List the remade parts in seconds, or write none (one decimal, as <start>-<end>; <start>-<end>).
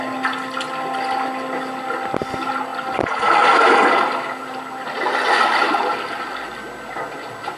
2.7-6.6